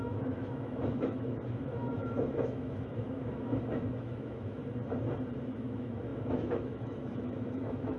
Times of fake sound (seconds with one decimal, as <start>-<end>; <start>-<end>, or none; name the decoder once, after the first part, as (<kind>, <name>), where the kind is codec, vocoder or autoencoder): 0.0-4.6 (autoencoder, DAC-VAE); 5.4-8.0